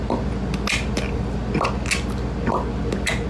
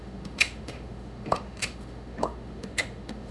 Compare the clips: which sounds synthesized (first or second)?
second